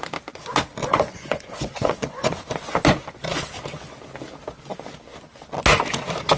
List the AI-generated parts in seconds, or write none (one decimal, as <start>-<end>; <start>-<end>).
0.8-2.4